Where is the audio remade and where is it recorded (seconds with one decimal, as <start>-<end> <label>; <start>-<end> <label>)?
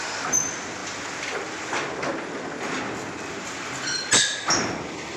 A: 0.0-5.2 recorded